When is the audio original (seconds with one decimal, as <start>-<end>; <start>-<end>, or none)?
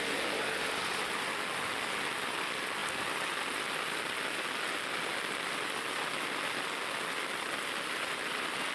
0.0-8.7